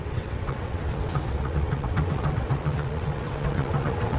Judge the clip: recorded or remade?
remade